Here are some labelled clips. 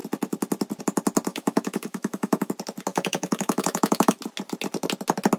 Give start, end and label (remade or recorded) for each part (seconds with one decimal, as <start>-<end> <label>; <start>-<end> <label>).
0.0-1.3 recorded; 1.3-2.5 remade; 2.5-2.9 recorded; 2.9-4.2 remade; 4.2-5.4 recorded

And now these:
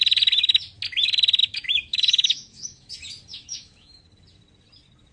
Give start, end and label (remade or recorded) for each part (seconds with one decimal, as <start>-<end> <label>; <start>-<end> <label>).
0.0-1.4 recorded; 1.4-2.9 remade; 2.9-3.3 recorded; 3.3-4.0 remade; 4.0-5.1 recorded

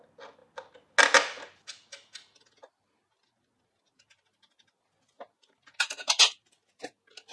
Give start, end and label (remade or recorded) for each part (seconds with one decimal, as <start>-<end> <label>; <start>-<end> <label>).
0.0-7.3 recorded

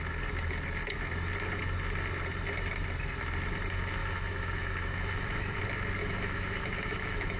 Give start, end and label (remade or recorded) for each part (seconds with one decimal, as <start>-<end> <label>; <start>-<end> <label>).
0.0-4.0 recorded; 4.0-5.6 remade; 5.6-6.0 recorded; 6.0-7.4 remade

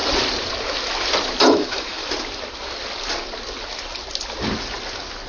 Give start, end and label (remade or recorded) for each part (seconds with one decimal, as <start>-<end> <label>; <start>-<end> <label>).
0.0-1.4 recorded; 1.4-2.0 remade; 2.0-5.3 recorded